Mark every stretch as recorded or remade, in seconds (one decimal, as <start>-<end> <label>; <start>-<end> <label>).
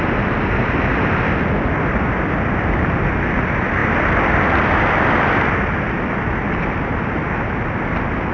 0.0-8.3 recorded